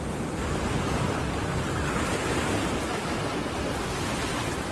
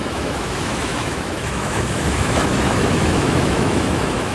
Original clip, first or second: first